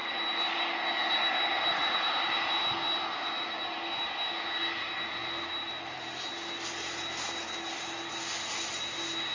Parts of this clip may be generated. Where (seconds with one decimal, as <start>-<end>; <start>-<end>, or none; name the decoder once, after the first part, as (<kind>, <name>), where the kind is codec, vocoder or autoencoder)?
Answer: none